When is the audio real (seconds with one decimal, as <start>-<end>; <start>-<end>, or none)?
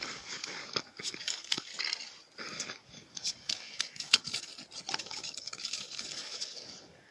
1.7-2.4; 4.5-5.0